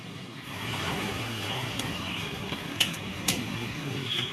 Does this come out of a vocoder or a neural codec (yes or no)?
yes